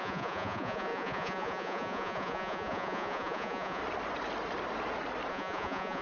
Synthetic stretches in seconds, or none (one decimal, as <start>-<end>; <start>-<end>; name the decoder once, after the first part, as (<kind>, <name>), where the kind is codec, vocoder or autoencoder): 0.0-3.8 (vocoder, Vocos); 5.3-6.0